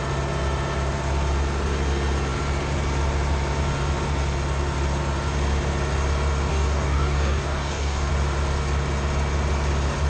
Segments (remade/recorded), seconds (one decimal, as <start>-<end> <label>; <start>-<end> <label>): 0.0-6.5 recorded; 6.5-8.1 remade; 8.1-10.1 recorded